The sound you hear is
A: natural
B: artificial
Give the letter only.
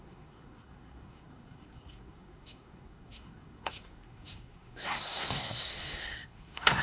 B